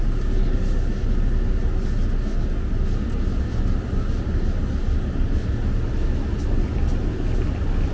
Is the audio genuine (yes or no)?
yes